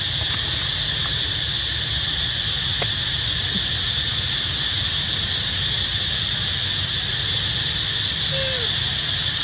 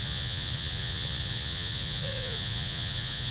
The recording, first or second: first